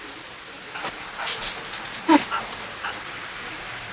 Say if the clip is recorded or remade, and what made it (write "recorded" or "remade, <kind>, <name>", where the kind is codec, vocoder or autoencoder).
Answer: recorded